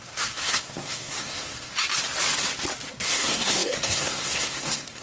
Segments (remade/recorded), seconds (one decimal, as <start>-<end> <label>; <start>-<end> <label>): 0.0-1.7 remade; 1.7-2.9 recorded; 2.9-5.0 remade